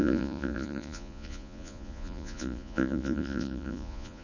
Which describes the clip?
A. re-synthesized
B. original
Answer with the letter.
A